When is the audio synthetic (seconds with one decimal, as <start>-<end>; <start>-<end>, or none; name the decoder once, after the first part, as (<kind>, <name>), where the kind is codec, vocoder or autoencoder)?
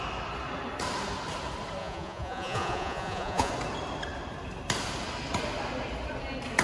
1.8-3.5 (vocoder, Vocos)